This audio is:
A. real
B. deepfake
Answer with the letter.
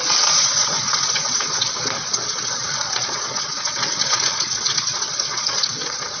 B